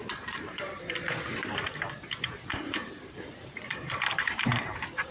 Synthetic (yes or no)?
yes